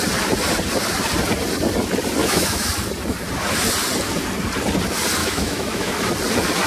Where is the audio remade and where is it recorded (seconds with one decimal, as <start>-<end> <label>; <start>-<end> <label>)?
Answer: 0.0-2.2 recorded; 2.2-2.7 remade; 2.7-5.2 recorded; 5.2-5.9 remade; 5.9-6.7 recorded